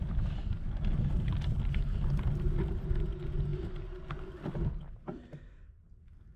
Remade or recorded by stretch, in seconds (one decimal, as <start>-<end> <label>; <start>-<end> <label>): 0.0-6.4 recorded